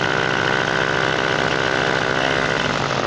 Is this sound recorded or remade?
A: recorded